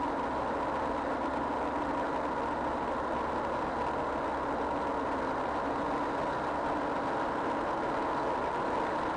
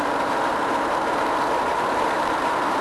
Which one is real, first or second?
first